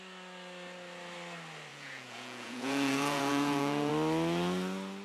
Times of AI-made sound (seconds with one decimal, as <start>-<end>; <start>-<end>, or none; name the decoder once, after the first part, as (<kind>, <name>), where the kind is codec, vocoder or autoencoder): 1.7-3.9 (vocoder, Vocos)